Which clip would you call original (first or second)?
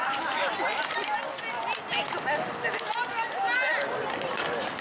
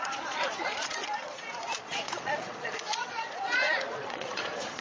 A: first